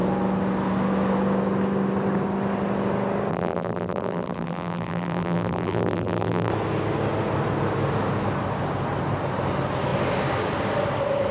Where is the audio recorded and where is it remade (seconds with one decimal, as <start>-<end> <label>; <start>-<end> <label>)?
0.0-3.3 recorded; 3.3-6.5 remade; 6.5-11.3 recorded